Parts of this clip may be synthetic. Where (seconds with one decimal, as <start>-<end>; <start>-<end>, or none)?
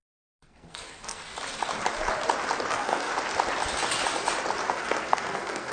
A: 0.0-1.3; 2.7-3.1; 4.7-5.7